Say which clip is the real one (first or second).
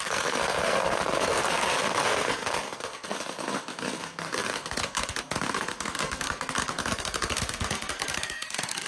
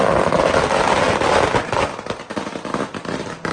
second